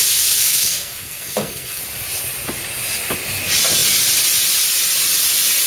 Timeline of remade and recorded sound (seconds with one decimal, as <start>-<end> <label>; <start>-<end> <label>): 0.0-1.8 remade; 1.8-5.7 recorded